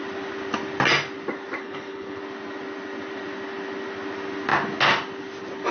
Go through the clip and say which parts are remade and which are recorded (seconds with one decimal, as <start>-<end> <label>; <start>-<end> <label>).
0.0-1.6 recorded; 1.6-2.2 remade; 2.2-5.7 recorded